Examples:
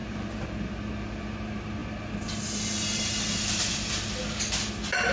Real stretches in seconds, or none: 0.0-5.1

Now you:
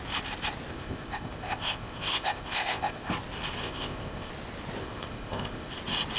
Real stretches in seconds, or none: 0.0-0.7; 3.1-3.6; 4.3-4.8; 5.7-6.2

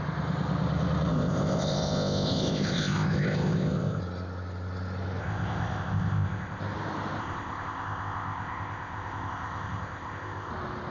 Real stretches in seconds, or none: 0.0-1.1; 4.0-5.2; 6.6-7.2; 10.5-10.9

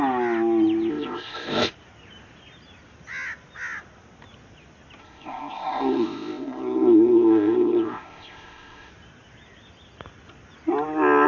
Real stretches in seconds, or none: 0.0-0.9; 1.7-5.0; 8.9-11.3

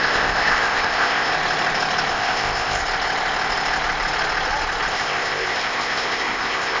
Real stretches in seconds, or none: 1.3-2.1; 2.8-4.9

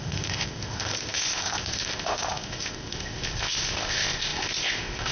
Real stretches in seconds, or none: none